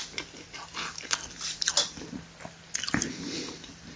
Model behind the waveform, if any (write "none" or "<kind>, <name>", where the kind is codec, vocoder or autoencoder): none